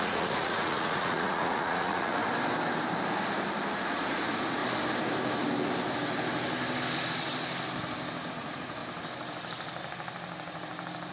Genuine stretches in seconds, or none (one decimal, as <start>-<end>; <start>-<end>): 2.2-3.7; 4.6-8.3; 8.8-11.1